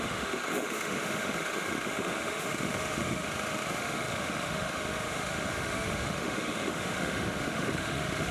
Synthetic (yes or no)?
yes